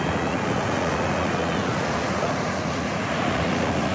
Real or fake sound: fake